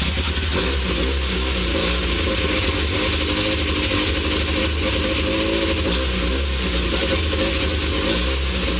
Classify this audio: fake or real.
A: real